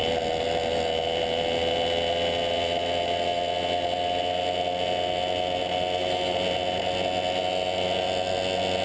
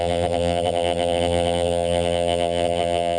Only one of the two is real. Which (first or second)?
first